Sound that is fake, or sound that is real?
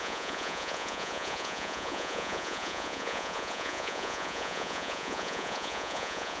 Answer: fake